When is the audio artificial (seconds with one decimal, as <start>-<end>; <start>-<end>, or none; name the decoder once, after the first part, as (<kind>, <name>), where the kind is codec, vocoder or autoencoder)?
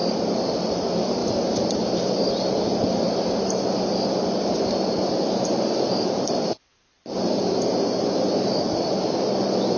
0.5-6.7 (vocoder, BigVGAN v2); 7.2-9.8